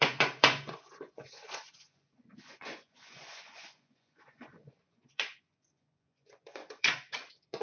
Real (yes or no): no